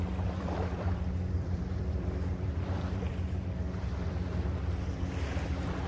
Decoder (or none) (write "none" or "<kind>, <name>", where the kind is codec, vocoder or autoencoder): vocoder, BigVGAN v2